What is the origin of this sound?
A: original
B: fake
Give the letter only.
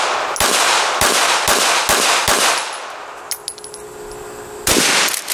A